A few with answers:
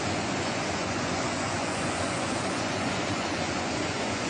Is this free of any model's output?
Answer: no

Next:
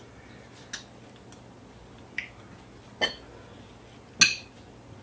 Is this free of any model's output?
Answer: yes